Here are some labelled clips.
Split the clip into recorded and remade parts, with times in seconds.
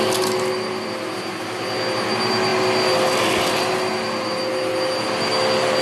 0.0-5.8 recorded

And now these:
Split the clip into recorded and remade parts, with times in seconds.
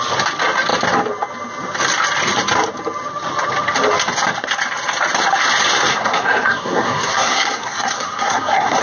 0.0-5.9 recorded; 5.9-8.8 remade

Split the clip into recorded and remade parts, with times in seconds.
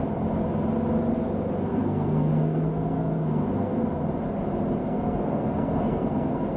0.0-1.7 recorded; 1.7-3.8 remade; 3.8-4.8 recorded; 4.8-6.6 remade